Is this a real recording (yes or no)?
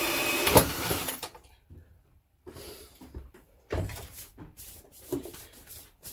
no